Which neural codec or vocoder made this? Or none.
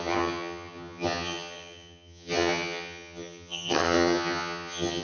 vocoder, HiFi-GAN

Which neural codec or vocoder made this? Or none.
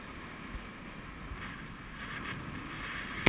none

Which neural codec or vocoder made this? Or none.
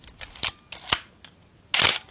none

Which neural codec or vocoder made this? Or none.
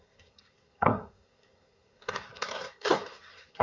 codec, SNAC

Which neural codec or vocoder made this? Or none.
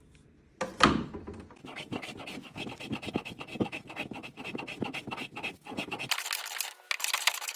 none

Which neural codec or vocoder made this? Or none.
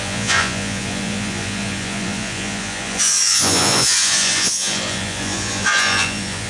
vocoder, Vocos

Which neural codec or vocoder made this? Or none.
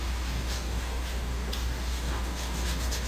codec, DAC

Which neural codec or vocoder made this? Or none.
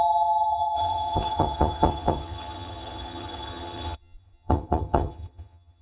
vocoder, HiFi-GAN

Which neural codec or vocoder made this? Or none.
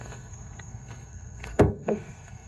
codec, SNAC